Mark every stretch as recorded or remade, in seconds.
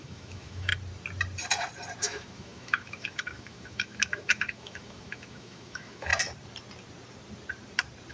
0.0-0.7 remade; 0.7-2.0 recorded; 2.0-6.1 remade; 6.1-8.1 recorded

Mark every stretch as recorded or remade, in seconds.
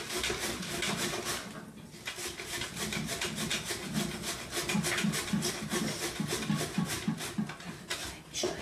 0.0-8.6 recorded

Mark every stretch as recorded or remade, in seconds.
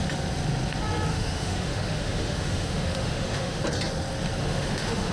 0.0-1.1 recorded; 1.1-3.6 remade; 3.6-4.4 recorded; 4.4-5.1 remade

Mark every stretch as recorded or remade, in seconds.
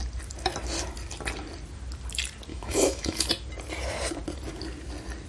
0.0-2.5 recorded; 2.5-3.3 remade; 3.3-5.3 recorded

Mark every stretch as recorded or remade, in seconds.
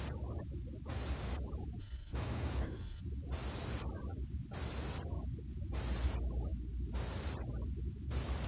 0.0-1.8 recorded; 1.8-3.0 remade; 3.0-8.5 recorded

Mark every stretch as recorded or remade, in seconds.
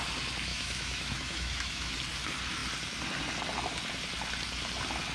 0.0-0.5 recorded; 0.5-1.9 remade; 1.9-5.1 recorded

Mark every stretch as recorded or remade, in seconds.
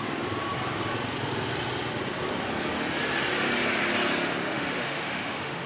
0.0-4.5 recorded; 4.5-5.7 remade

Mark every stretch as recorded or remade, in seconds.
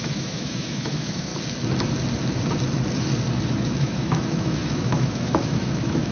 0.0-1.3 remade; 1.3-3.6 recorded; 3.6-6.1 remade